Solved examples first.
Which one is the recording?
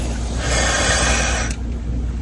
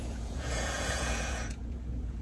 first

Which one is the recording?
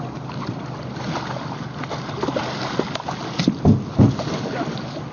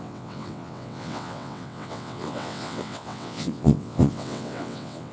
first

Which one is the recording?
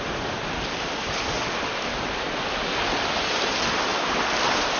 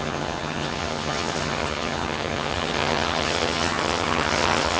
first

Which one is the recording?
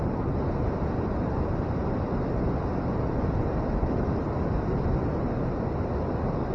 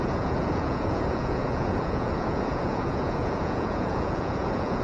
first